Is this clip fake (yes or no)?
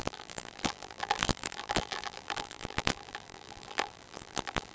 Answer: yes